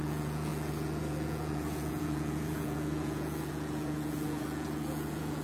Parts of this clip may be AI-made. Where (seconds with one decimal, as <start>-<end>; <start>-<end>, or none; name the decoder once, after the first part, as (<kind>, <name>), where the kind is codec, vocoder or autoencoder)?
0.0-5.4 (vocoder, Vocos)